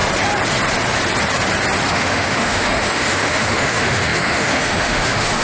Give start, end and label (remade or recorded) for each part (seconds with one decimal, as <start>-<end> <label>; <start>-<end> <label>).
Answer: 0.0-1.9 recorded; 1.9-5.4 remade